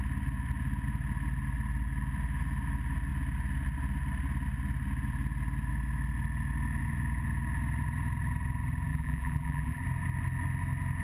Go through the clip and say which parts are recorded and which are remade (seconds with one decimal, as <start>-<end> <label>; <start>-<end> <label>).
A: 0.0-8.9 recorded; 8.9-9.8 remade; 9.8-11.0 recorded